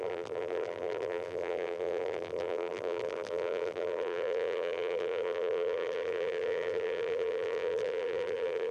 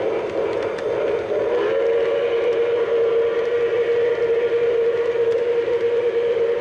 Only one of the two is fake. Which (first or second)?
first